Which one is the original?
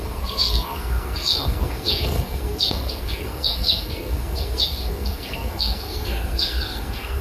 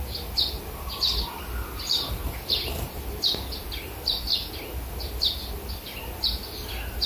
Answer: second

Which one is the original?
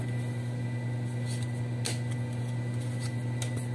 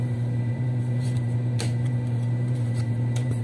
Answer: first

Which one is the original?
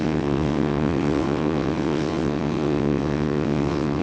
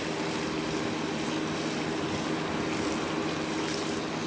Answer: second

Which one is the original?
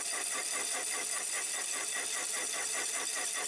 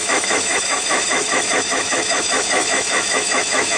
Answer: first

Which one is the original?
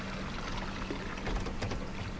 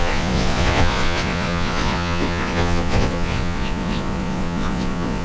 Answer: first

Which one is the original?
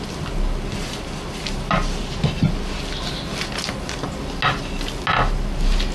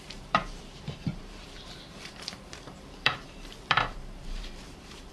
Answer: first